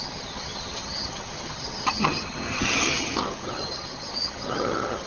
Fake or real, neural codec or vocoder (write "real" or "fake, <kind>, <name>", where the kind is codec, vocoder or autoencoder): fake, vocoder, HiFi-GAN